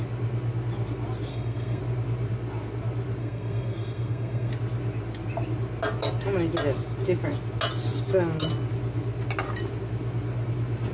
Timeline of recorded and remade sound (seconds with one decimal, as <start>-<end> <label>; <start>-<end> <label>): 0.0-1.3 recorded; 1.3-1.8 remade; 1.8-3.2 recorded; 3.2-4.5 remade; 4.5-10.9 recorded